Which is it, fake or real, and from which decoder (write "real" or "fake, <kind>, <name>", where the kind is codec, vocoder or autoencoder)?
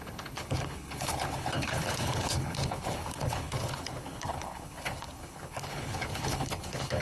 fake, codec, HILCodec